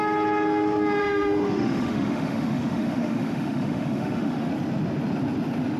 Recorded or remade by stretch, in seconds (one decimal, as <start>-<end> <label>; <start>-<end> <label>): 0.0-1.0 recorded; 1.0-4.5 remade; 4.5-5.8 recorded